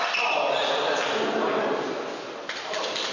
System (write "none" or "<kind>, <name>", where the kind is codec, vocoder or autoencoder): none